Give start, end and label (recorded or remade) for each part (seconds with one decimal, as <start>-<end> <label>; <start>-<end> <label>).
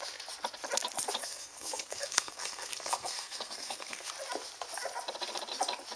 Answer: 0.0-1.2 recorded; 1.2-4.1 remade; 4.1-6.0 recorded